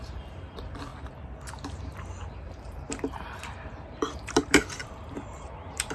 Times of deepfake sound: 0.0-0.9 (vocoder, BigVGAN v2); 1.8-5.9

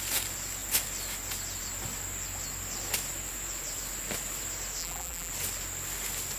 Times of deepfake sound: 4.8-5.3 (vocoder, BigVGAN v2)

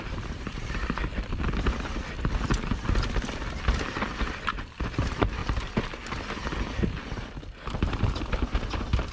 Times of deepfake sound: 0.0-1.1 (vocoder, BigVGAN v2); 4.0-5.4; 7.9-9.1

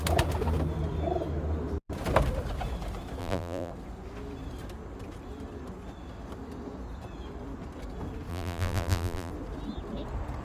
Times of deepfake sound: 3.2-3.7 (vocoder, BigVGAN v2); 8.3-9.3